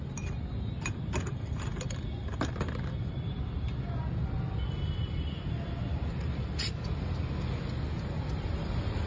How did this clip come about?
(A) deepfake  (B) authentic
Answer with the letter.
B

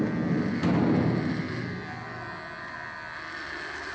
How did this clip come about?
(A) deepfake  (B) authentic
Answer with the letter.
B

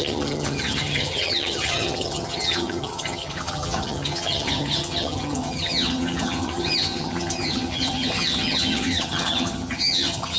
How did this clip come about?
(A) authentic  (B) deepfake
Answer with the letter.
B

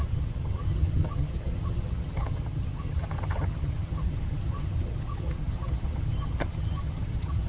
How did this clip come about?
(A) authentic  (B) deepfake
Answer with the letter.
B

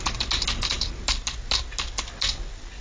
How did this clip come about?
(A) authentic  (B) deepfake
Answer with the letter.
A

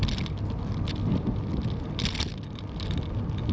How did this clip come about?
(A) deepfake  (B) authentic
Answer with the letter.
B